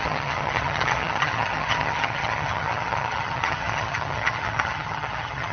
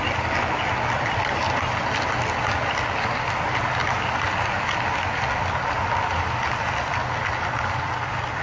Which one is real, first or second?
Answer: second